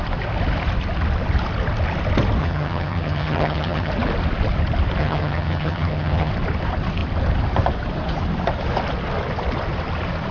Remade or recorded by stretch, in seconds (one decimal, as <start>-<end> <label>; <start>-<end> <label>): 0.0-2.4 recorded; 2.4-3.9 remade; 3.9-5.0 recorded; 5.0-6.3 remade; 6.3-10.3 recorded